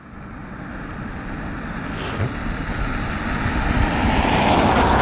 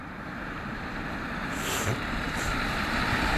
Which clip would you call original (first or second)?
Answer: first